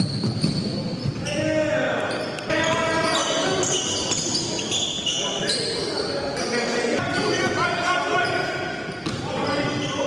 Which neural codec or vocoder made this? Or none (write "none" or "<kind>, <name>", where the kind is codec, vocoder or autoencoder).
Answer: none